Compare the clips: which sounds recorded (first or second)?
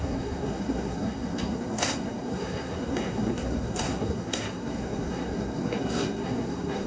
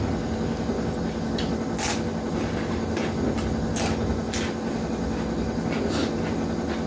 second